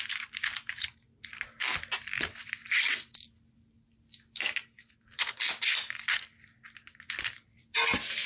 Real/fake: real